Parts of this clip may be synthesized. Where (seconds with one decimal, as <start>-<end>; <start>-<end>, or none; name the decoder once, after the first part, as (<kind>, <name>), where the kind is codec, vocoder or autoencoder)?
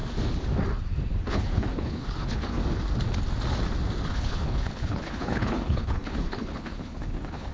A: 1.3-2.6 (codec, HILCodec); 4.1-7.5